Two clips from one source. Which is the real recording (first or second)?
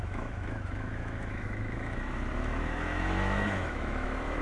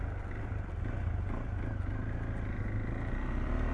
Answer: second